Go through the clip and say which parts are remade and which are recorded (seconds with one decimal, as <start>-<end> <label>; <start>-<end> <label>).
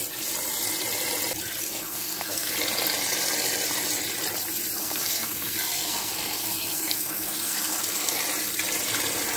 0.0-1.6 recorded; 1.6-2.5 remade; 2.5-4.8 recorded; 4.8-8.2 remade; 8.2-9.4 recorded